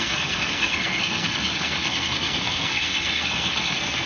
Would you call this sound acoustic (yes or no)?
no